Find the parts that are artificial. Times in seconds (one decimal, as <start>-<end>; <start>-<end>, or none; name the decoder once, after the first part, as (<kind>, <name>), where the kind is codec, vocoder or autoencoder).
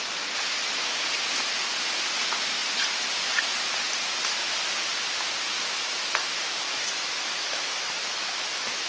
5.5-8.9 (autoencoder, DAC-VAE)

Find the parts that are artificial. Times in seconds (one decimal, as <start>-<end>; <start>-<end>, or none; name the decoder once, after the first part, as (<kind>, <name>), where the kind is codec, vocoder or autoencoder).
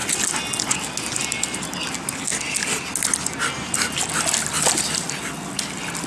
none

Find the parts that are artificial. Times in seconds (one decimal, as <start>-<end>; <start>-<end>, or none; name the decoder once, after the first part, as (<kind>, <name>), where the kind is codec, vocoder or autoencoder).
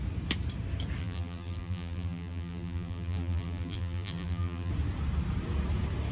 1.0-4.7 (vocoder, BigVGAN v2)